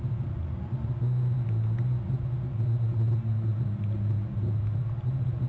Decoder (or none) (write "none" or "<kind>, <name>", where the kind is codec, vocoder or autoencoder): none